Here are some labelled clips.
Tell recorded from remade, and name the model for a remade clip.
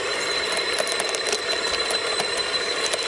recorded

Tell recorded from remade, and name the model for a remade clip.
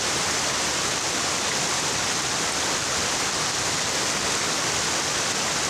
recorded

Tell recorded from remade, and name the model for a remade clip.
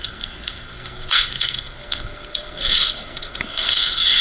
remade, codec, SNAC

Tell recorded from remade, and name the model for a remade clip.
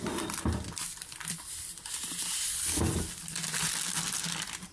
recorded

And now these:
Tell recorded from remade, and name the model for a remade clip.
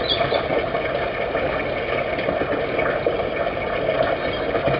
recorded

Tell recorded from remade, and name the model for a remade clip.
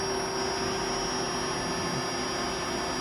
recorded